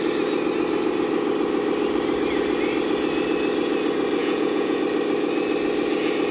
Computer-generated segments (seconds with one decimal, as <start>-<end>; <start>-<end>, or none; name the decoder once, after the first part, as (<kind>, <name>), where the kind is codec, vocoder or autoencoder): 4.2-4.8 (vocoder, Vocos)